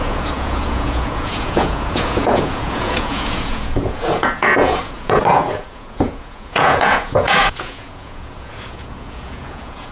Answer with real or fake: fake